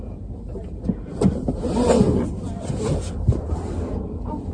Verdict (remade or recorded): recorded